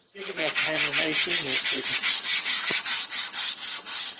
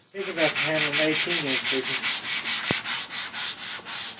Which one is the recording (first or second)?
second